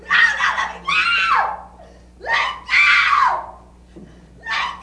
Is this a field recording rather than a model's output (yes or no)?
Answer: yes